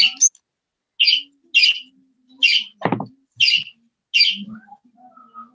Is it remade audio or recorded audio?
recorded